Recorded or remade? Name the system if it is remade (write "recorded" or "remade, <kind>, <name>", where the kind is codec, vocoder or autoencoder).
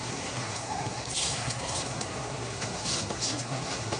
remade, codec, SNAC